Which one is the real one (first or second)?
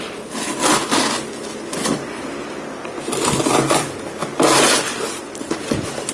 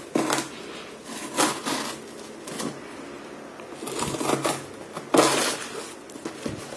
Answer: second